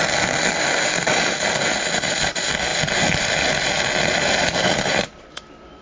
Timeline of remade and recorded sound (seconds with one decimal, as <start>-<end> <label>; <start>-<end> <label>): 0.0-5.8 recorded